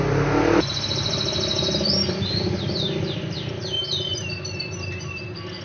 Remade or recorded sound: recorded